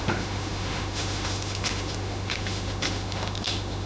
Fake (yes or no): yes